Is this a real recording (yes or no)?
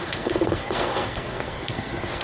no